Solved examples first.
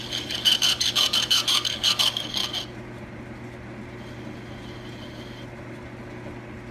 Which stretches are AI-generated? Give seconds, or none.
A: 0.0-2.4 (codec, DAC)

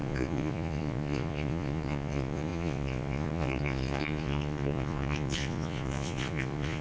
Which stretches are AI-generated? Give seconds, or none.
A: 0.0-6.8 (vocoder, Vocos)

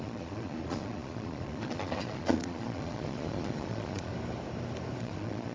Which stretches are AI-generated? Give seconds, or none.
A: 0.0-4.1 (vocoder, Vocos); 5.0-5.5

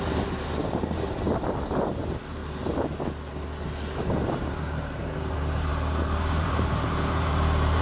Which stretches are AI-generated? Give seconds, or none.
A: 0.0-2.4 (vocoder, BigVGAN v2); 4.4-5.7; 6.4-7.8

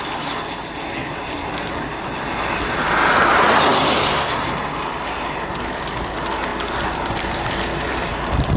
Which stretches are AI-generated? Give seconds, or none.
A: 6.5-8.1 (vocoder, BigVGAN v2)